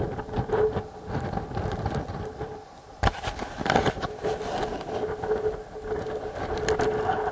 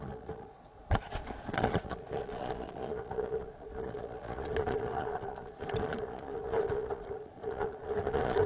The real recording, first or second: first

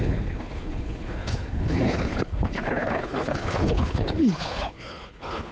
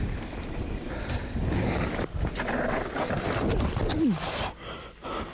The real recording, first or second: second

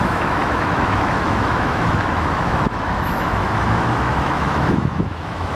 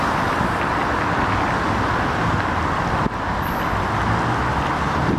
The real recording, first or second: second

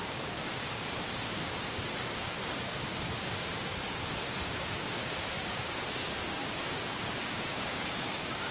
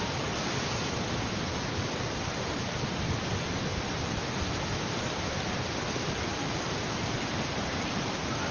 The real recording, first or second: second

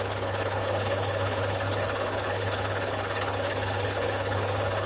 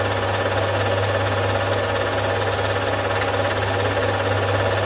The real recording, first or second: second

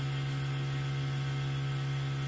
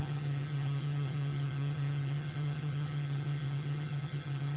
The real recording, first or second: first